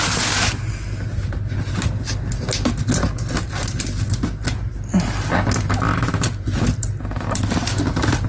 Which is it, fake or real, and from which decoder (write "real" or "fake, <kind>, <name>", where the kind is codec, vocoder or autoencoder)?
real